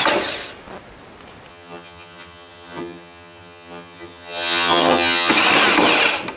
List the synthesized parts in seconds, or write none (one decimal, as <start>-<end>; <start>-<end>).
1.5-5.3